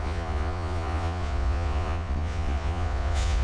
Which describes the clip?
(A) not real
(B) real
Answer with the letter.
A